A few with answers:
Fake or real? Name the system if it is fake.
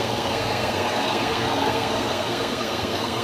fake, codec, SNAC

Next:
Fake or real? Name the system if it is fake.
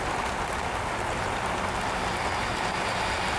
real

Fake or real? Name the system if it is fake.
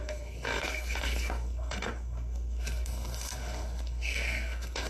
fake, codec, SNAC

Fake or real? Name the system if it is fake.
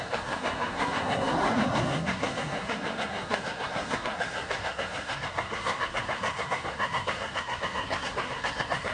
fake, codec, SNAC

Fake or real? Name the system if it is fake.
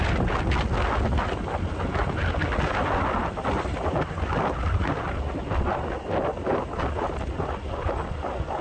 real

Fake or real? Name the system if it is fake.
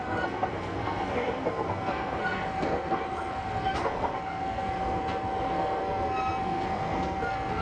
fake, codec, SNAC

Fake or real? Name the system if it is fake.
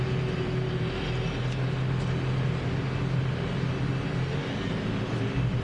real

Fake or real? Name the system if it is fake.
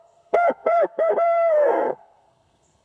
fake, codec, SNAC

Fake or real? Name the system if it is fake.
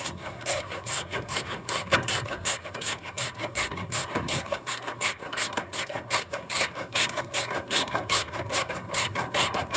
fake, codec, SNAC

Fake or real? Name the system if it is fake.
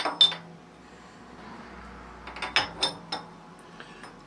real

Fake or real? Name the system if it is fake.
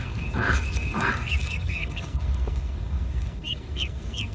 fake, codec, SNAC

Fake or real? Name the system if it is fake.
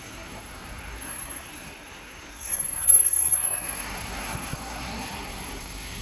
fake, codec, SNAC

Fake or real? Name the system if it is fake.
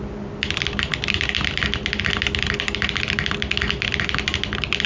real